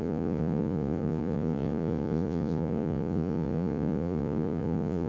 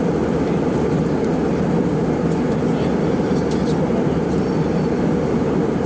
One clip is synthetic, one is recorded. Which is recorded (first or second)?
second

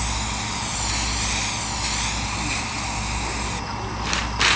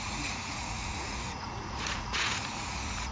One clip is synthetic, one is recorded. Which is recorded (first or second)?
first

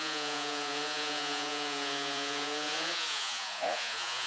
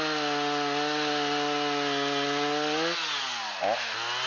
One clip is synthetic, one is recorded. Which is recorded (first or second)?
second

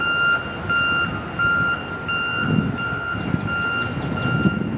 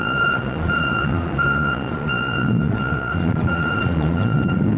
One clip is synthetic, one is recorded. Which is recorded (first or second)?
first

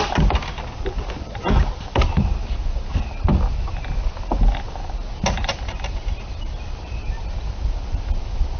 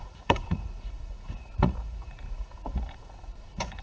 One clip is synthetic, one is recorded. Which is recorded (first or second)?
first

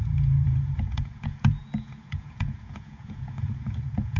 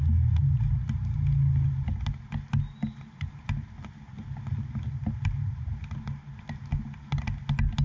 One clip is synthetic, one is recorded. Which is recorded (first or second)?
second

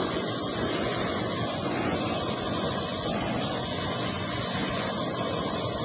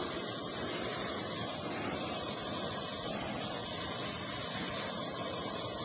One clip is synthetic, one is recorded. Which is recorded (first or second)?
second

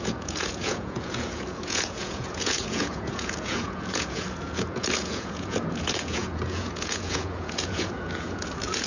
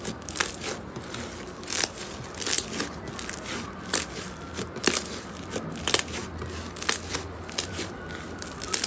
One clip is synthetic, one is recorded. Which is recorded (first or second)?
second